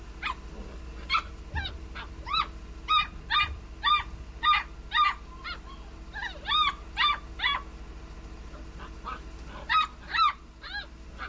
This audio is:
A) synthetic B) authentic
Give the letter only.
B